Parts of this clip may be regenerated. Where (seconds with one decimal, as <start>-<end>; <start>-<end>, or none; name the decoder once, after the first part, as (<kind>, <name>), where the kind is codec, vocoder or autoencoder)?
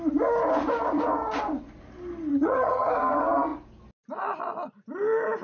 2.3-2.9 (vocoder, HiFi-GAN)